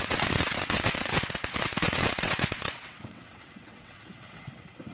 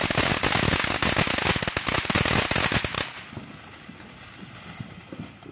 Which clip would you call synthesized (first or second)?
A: first